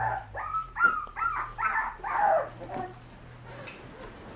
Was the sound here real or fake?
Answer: real